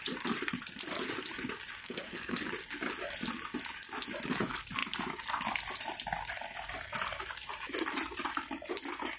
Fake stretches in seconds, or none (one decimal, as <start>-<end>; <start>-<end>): 1.8-2.5